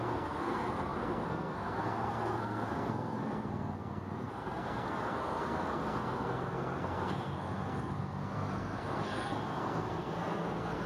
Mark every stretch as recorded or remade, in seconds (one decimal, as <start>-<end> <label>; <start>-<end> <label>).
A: 0.0-10.9 remade